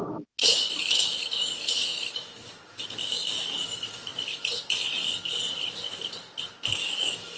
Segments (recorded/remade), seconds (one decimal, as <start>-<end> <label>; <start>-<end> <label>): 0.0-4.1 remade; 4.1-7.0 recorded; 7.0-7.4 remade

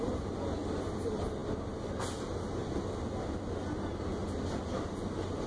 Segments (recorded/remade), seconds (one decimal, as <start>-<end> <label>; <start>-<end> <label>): 0.0-5.5 recorded

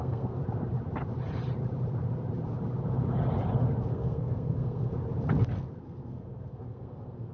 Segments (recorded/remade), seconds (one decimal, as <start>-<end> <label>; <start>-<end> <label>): 0.0-0.4 remade; 0.4-3.9 recorded; 3.9-4.9 remade; 4.9-5.8 recorded; 5.8-7.3 remade

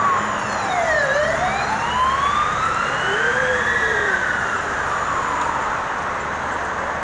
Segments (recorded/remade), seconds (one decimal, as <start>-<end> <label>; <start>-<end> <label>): 0.0-1.5 remade; 1.5-2.5 recorded; 2.5-4.2 remade; 4.2-6.1 recorded; 6.1-7.0 remade

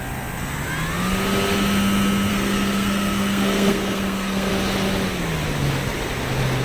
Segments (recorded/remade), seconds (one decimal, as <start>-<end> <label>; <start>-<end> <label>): 0.0-2.3 recorded; 2.3-4.5 remade; 4.5-6.6 recorded